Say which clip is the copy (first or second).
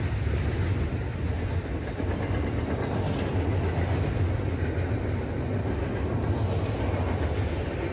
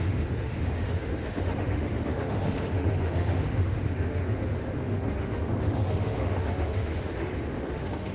second